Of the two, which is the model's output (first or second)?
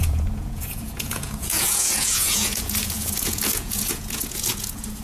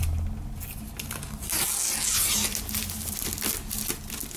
first